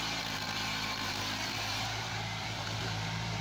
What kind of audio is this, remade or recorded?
remade